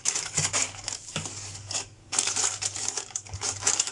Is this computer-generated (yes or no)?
yes